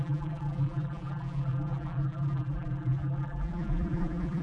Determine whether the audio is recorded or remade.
remade